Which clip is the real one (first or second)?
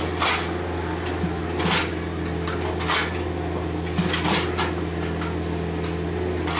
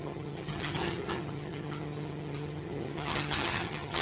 first